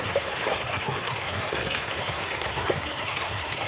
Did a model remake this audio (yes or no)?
yes